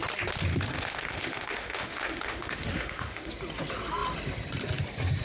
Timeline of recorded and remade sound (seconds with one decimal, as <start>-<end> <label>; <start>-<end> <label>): 0.0-0.5 recorded; 0.5-3.3 remade; 3.3-5.2 recorded